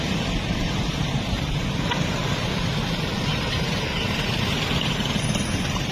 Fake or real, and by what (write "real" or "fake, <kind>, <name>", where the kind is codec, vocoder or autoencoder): fake, vocoder, BigVGAN v2